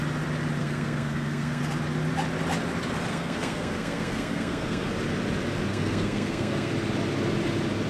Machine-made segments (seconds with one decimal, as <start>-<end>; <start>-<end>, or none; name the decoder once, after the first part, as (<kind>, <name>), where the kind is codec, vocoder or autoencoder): 0.6-1.6 (codec, SNAC); 3.1-4.9; 5.7-6.7